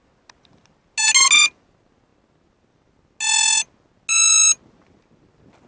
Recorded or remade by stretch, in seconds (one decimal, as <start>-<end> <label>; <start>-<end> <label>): 0.0-5.7 recorded